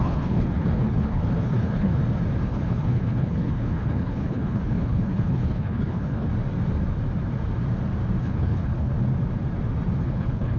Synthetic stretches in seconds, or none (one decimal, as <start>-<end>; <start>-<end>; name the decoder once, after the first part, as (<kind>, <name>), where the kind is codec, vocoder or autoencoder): 0.0-2.0 (codec, HILCodec); 2.5-6.3; 8.2-8.9; 10.0-10.6